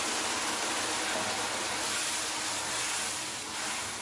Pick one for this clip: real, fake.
real